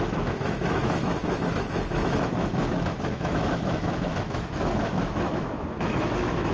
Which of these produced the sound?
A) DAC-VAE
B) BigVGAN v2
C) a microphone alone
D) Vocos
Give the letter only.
A